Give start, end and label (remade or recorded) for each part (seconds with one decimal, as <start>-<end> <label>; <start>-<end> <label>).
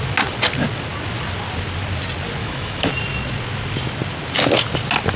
0.0-2.4 recorded; 2.4-2.9 remade; 2.9-5.2 recorded